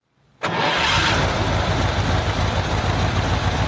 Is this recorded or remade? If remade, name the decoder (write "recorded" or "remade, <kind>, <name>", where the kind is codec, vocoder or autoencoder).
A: recorded